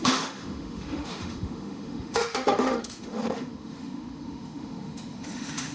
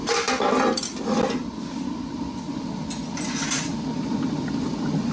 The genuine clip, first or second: second